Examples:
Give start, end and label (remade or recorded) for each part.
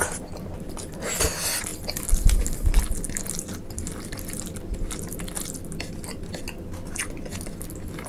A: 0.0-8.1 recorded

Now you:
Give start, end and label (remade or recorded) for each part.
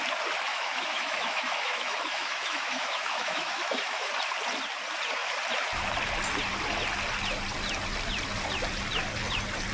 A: 0.0-0.5 recorded; 0.5-4.1 remade; 4.1-9.7 recorded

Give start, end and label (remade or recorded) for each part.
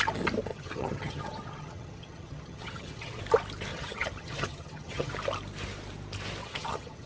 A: 0.0-0.5 recorded; 0.5-3.2 remade; 3.2-3.7 recorded; 3.7-5.1 remade; 5.1-6.4 recorded; 6.4-7.1 remade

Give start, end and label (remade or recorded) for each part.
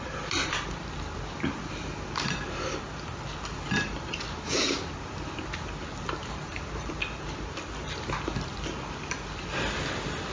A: 0.0-6.2 recorded; 6.2-6.9 remade; 6.9-10.3 recorded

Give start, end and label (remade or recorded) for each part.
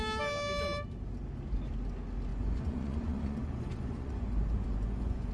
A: 0.0-2.3 recorded; 2.3-5.3 remade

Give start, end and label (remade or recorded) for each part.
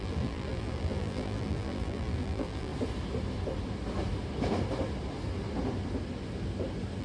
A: 0.0-2.7 remade; 2.7-7.0 recorded